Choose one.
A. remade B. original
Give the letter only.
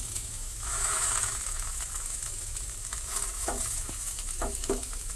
A